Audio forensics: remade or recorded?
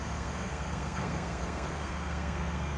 remade